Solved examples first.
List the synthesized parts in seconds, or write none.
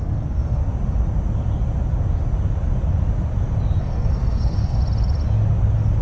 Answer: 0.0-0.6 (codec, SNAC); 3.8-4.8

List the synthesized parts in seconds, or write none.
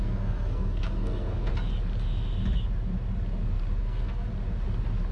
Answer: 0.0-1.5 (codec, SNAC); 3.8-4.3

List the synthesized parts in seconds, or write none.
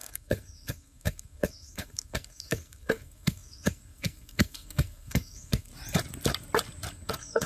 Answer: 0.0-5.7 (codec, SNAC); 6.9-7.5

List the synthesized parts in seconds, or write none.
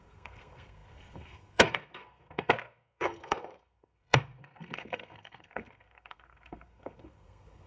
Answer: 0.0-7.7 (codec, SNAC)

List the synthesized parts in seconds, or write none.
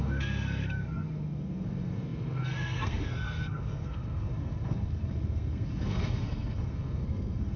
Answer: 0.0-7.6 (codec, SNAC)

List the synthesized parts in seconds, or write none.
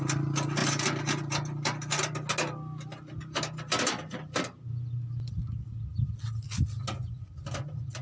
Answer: none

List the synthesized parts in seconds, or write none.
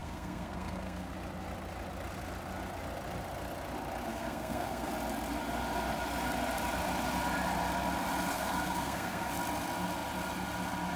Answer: 0.0-1.1 (codec, SNAC); 4.1-4.9; 8.3-9.3